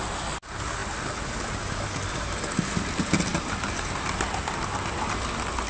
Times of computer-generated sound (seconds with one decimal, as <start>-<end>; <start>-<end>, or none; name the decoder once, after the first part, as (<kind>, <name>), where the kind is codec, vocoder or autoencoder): none